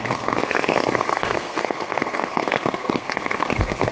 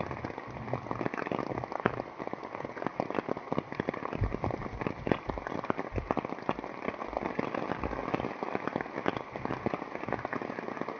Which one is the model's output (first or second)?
first